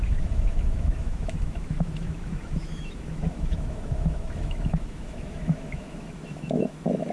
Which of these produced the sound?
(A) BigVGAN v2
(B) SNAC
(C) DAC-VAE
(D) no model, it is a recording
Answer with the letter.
C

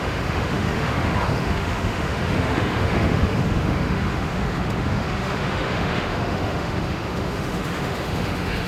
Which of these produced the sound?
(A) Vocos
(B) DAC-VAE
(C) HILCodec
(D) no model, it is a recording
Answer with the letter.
B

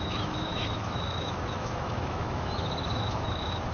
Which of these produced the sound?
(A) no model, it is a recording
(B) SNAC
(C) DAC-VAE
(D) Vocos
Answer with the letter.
C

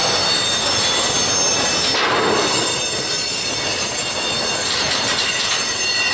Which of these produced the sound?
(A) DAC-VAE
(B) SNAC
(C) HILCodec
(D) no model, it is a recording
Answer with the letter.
D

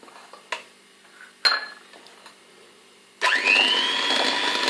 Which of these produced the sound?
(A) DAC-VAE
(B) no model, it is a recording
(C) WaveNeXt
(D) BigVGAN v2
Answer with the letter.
B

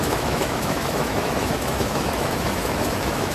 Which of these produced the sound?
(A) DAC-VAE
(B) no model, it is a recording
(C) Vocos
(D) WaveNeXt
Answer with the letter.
A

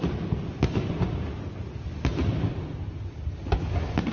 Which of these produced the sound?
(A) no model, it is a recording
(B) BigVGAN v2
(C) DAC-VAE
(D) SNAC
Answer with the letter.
A